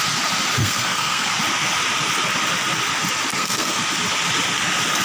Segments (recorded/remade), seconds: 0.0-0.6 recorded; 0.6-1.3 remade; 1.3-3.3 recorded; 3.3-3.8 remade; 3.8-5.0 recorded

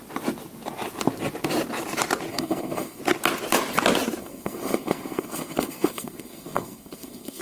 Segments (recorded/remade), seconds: 0.0-2.3 recorded; 2.3-3.0 remade; 3.0-4.2 recorded; 4.2-7.4 remade